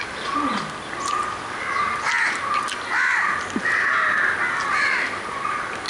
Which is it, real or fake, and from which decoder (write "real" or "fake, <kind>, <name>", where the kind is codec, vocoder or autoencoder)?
real